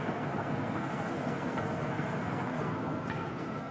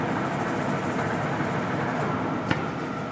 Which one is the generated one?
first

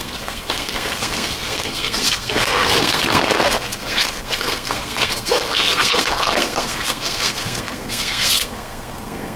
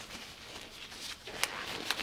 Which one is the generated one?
first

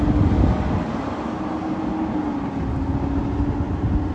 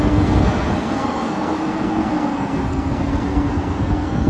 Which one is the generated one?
second